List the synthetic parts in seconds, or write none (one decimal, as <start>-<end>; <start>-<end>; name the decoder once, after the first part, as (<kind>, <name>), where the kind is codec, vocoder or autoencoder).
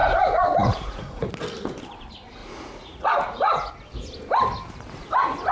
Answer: 0.0-1.3 (vocoder, Vocos); 2.4-3.7